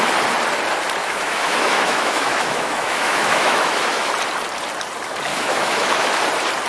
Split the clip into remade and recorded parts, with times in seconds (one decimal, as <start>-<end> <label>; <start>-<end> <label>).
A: 0.0-1.0 recorded; 1.0-4.1 remade; 4.1-5.3 recorded; 5.3-6.2 remade; 6.2-6.7 recorded